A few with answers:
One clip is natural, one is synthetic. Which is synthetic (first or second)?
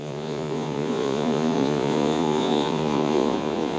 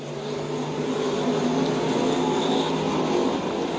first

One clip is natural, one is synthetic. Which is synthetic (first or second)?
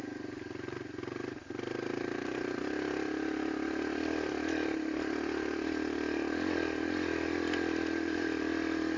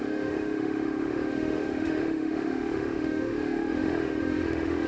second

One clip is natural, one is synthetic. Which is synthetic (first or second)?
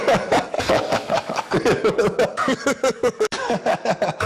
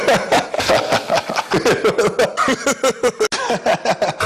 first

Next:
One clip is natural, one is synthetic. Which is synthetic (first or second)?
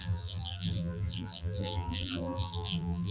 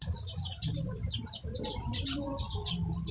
first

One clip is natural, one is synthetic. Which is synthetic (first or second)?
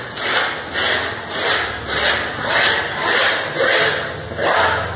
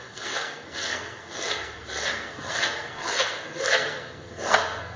second